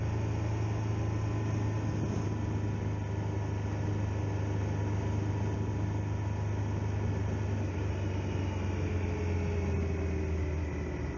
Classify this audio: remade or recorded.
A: recorded